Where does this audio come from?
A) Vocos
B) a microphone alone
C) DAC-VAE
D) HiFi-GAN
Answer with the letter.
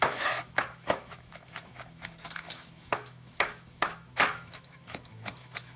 C